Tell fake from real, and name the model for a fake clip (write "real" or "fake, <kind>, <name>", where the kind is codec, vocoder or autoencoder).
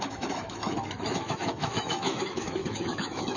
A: fake, autoencoder, DAC-VAE